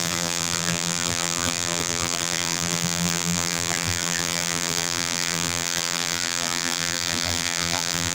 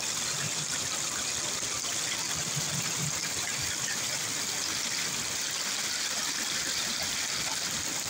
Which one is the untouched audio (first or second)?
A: second